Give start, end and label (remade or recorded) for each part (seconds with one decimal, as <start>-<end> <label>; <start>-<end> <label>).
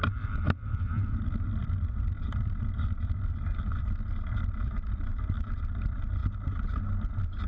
0.0-1.6 recorded; 1.6-3.8 remade; 3.8-7.5 recorded